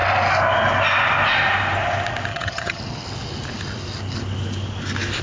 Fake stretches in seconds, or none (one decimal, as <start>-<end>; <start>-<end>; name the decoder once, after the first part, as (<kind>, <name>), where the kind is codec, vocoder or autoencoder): 2.3-2.8 (vocoder, HiFi-GAN)